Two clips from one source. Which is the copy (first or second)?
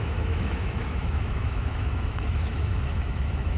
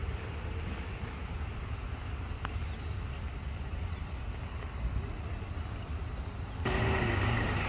first